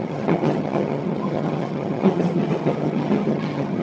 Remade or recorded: remade